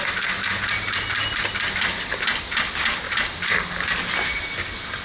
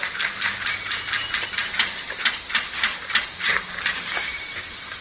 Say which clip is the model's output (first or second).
second